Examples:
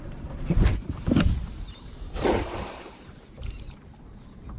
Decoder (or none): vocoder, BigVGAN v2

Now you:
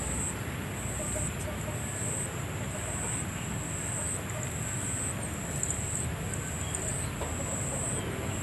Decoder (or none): none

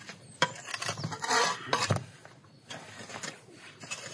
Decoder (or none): none